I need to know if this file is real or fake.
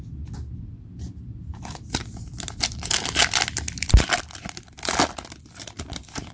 real